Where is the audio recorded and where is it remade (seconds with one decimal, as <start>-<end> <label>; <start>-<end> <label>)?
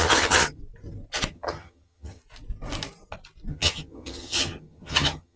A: 0.0-0.6 remade; 0.6-1.3 recorded; 1.3-2.2 remade; 2.2-3.5 recorded; 3.5-5.4 remade